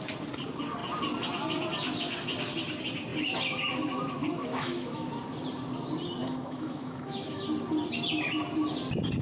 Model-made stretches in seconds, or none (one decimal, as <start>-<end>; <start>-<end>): 4.2-5.1; 6.2-7.4